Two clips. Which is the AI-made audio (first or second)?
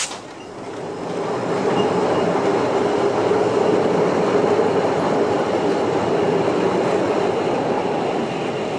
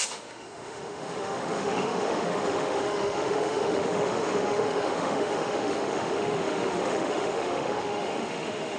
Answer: second